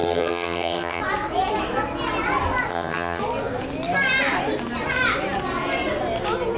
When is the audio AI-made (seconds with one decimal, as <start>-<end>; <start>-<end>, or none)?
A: 0.0-1.0; 2.7-3.2